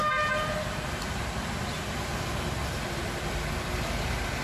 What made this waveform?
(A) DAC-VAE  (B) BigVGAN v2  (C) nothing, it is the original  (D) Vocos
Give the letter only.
C